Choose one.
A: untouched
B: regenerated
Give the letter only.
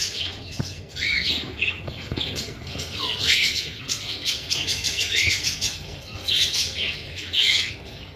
B